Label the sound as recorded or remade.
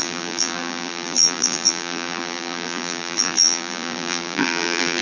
remade